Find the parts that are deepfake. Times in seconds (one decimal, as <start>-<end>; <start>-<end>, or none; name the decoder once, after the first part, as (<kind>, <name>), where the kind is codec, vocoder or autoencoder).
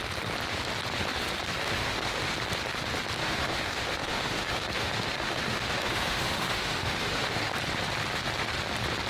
1.6-2.3 (autoencoder, DAC-VAE); 3.2-7.5